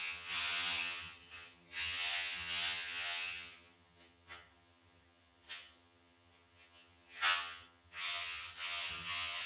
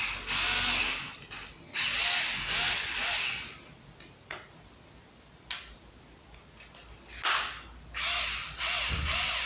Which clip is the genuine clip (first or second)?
second